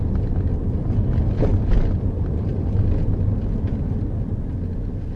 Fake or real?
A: real